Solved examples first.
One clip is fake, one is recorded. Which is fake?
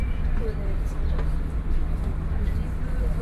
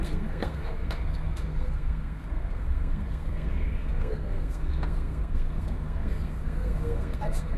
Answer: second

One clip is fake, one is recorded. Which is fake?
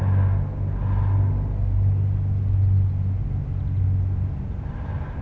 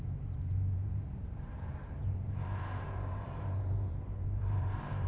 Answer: second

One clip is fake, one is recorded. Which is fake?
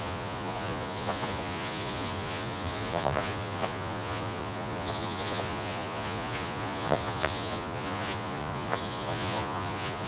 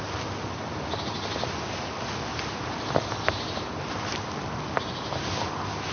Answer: first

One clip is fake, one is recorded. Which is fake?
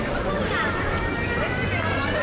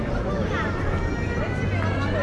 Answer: first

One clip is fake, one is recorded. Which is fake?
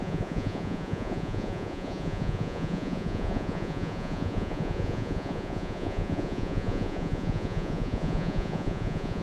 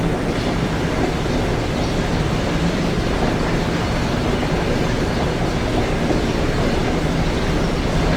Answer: first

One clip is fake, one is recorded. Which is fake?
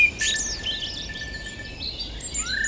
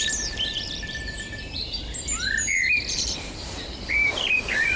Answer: second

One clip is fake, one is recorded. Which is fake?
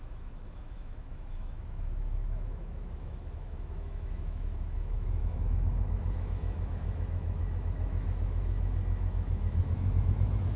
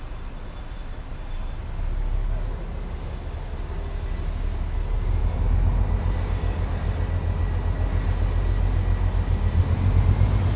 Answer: first